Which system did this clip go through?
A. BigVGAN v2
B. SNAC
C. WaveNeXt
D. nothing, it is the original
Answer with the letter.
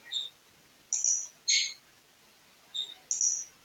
D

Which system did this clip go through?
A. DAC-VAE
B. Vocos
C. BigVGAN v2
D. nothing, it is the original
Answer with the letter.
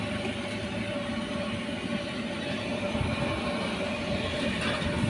D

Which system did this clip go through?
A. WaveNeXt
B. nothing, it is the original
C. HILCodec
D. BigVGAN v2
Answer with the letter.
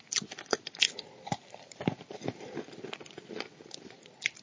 D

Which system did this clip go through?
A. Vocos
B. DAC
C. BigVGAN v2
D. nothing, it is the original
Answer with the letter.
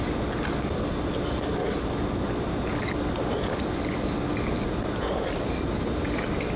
D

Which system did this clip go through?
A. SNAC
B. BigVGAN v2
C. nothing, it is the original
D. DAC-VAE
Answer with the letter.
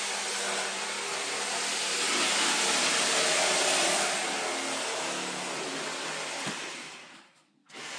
C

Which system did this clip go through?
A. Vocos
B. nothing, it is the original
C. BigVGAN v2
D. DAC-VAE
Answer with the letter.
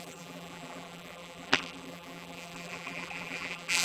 C